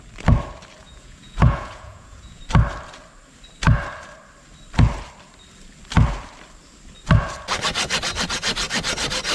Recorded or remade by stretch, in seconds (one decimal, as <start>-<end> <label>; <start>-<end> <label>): 0.0-0.8 recorded; 0.8-2.4 remade; 2.4-9.3 recorded